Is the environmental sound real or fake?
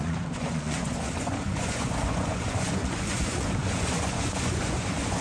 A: fake